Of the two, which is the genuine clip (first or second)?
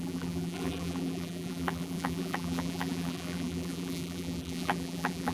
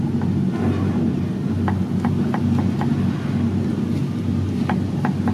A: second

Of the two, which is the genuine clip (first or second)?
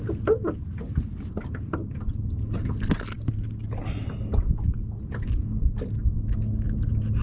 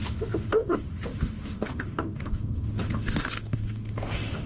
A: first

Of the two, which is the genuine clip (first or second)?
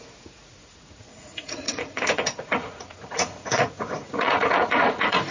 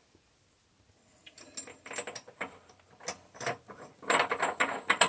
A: second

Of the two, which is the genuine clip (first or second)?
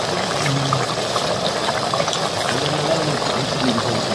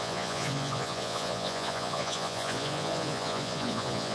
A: first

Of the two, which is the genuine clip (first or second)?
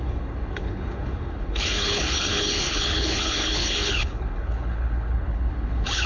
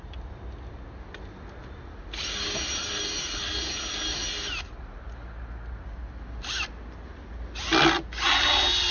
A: second